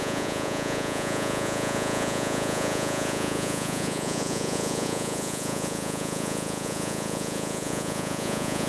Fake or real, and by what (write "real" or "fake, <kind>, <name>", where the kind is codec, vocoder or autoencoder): fake, vocoder, Vocos